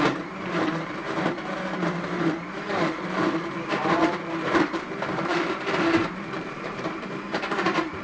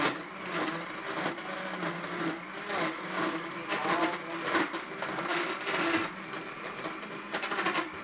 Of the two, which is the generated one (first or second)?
first